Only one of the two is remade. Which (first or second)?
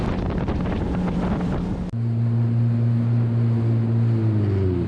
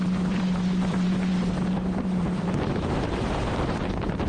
second